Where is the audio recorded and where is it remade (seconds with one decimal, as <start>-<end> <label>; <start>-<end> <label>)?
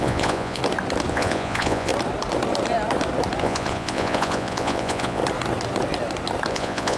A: 0.0-0.6 remade; 0.6-1.1 recorded; 1.1-1.9 remade; 1.9-3.4 recorded; 3.4-5.2 remade; 5.2-6.5 recorded; 6.5-7.0 remade